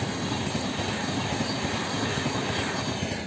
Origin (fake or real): real